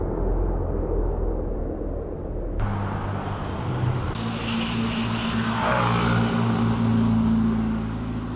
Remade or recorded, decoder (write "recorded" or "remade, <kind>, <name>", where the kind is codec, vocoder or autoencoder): recorded